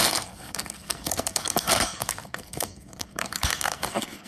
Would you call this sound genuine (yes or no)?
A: no